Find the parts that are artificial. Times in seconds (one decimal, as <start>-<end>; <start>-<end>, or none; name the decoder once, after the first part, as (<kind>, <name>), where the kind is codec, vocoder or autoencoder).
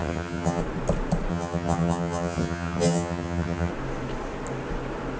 0.0-0.6 (vocoder, HiFi-GAN); 1.3-3.7